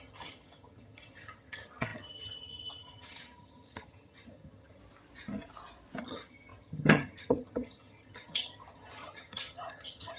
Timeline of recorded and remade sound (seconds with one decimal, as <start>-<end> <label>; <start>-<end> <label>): 0.0-4.8 remade; 4.8-6.0 recorded; 6.0-10.2 remade

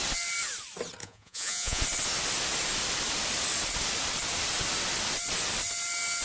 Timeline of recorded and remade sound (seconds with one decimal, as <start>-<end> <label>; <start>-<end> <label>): 0.0-1.0 recorded; 1.0-1.8 remade; 1.8-6.2 recorded

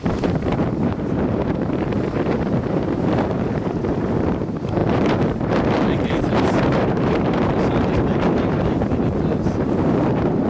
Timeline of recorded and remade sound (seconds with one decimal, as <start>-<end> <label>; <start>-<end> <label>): 0.0-10.5 remade

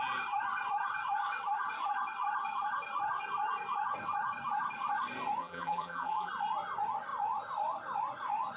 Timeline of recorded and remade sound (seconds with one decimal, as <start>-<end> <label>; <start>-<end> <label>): 0.0-5.4 recorded; 5.4-6.3 remade; 6.3-8.6 recorded